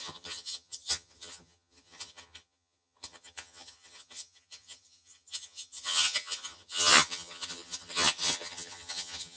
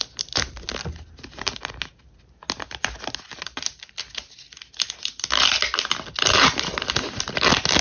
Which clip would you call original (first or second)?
second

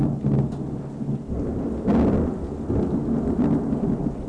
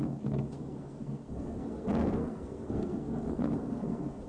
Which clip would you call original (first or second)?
first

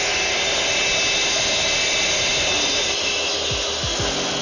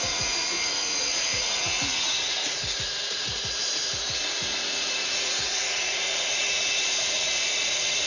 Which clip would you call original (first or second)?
first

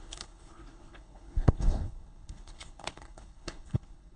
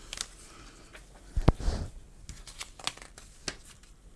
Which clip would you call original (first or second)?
second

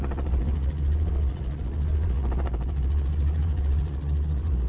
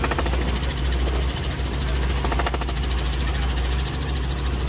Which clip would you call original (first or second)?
second